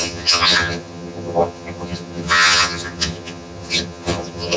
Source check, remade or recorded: remade